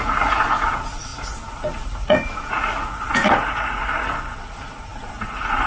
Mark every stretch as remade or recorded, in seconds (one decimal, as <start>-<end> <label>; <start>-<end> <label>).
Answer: 0.0-5.7 remade